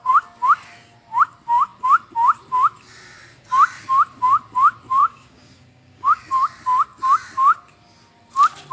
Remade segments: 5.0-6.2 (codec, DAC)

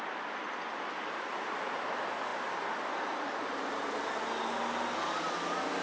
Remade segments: none

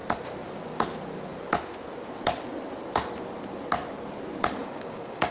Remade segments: 4.6-5.3 (codec, DAC)

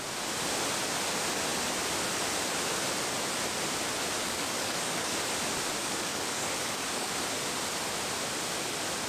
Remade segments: 4.2-5.1 (codec, DAC); 5.8-7.1

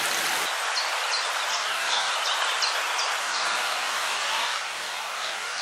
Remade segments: 1.5-2.1 (codec, DAC); 3.2-5.6

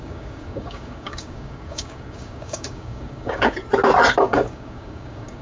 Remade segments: 0.0-3.6 (codec, DAC); 4.2-5.4

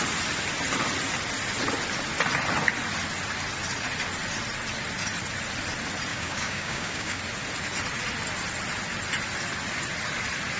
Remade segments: 6.1-7.2 (codec, DAC)

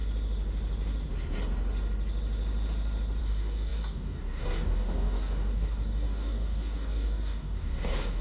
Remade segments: 3.2-8.2 (codec, DAC)